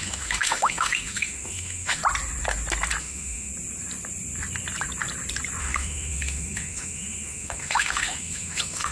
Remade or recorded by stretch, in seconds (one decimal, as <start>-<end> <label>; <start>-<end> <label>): 0.0-2.0 remade; 2.0-3.0 recorded; 3.0-3.5 remade; 3.5-5.6 recorded; 5.6-8.9 remade